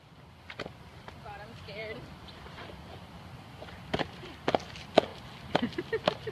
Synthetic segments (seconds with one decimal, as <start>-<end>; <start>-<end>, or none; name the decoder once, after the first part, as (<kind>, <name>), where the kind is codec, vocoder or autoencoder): 1.8-3.2 (vocoder, BigVGAN v2)